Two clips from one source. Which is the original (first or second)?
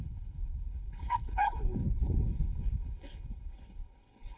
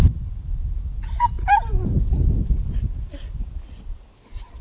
second